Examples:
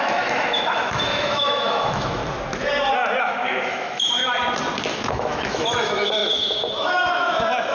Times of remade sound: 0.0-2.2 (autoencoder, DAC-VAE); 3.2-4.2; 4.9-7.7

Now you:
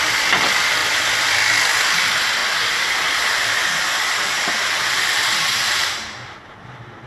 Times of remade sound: none

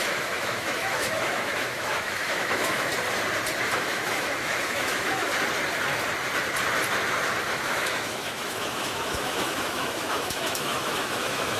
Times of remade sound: 0.0-2.9 (autoencoder, DAC-VAE); 3.8-5.3; 7.5-11.6

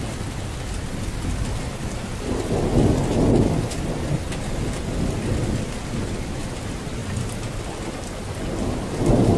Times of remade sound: none

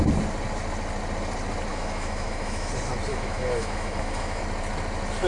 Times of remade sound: 1.7-2.7 (autoencoder, DAC-VAE); 3.1-4.4

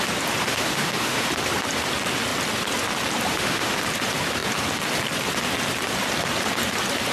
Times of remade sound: 0.4-1.3 (autoencoder, DAC-VAE); 3.3-3.8

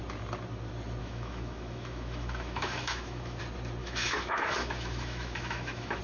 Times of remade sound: 1.0-3.4 (autoencoder, DAC-VAE); 3.8-6.0